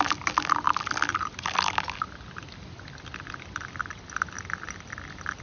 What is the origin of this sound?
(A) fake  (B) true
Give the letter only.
B